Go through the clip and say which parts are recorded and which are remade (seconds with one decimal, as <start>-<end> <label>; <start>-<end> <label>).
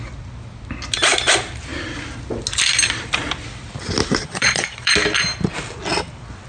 0.0-4.2 recorded; 4.2-4.9 remade; 4.9-6.5 recorded